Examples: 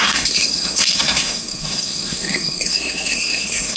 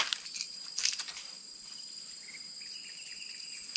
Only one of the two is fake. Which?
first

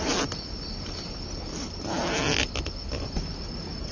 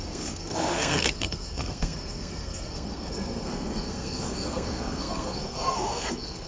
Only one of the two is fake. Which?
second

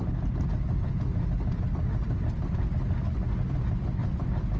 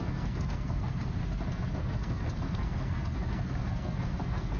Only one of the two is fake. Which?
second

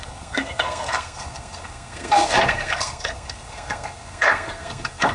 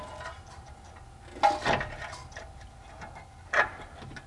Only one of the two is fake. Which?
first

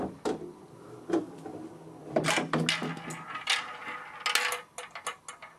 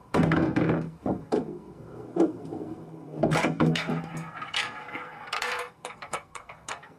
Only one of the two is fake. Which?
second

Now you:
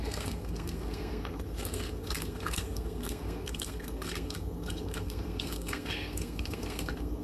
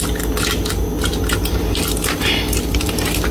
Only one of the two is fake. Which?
first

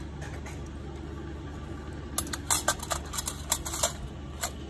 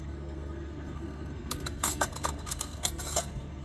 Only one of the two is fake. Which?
second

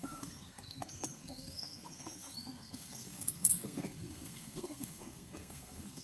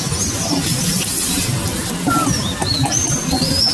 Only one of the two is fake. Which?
first